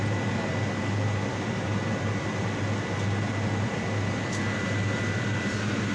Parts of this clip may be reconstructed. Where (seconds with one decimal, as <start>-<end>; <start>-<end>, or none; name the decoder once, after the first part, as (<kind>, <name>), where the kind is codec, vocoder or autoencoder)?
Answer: none